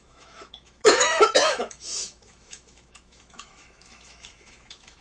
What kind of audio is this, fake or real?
fake